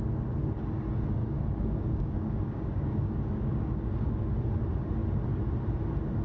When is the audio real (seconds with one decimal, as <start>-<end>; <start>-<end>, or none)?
0.0-1.2; 4.3-6.2